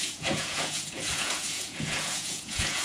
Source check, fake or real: fake